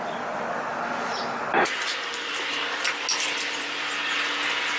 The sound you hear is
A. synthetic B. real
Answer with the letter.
B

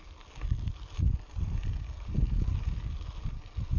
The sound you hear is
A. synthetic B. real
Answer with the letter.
B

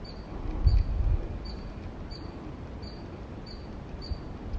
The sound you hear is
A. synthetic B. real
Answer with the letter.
B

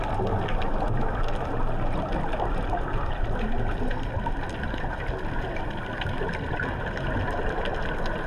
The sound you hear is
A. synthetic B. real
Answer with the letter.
B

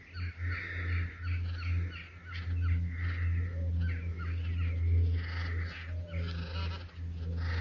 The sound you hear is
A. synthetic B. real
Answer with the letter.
B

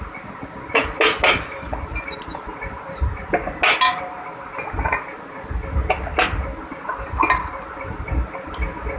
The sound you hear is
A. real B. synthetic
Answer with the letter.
A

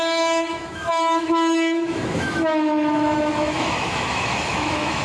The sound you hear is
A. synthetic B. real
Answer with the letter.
A